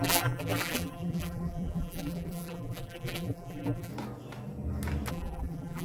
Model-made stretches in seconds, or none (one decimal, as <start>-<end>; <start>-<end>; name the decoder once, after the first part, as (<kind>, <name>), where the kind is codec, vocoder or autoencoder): 0.0-3.9 (vocoder, BigVGAN v2); 5.1-5.8